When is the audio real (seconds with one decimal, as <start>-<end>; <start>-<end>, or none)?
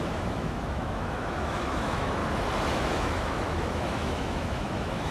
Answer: 2.2-2.7